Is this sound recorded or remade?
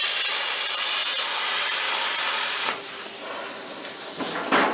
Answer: recorded